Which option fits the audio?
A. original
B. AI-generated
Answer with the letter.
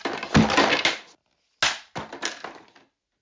A